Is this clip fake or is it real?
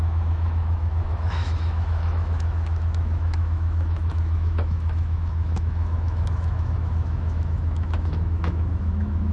fake